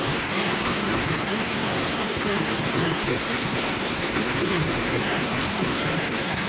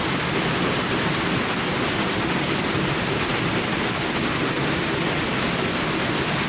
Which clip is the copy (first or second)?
first